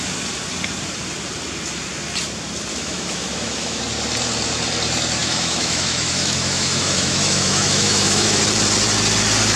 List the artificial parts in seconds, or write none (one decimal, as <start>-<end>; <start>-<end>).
2.7-3.8; 5.2-8.4